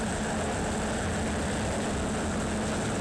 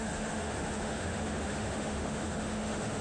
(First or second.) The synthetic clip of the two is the second